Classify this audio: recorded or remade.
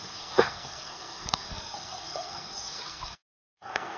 remade